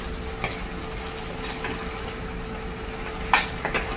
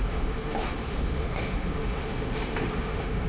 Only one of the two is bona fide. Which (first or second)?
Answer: first